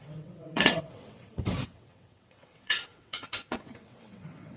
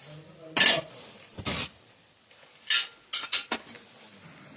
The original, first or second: second